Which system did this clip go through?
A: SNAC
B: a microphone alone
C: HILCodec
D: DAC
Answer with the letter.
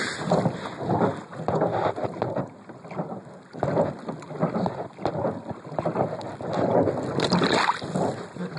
B